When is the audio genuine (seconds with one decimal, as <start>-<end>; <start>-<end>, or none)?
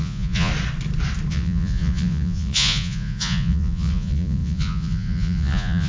0.5-1.3